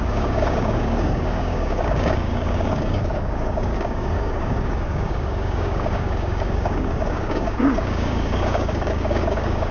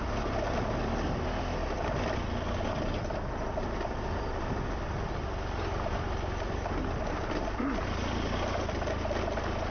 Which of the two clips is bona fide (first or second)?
second